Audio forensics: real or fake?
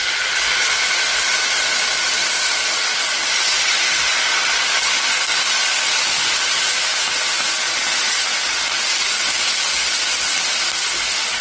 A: real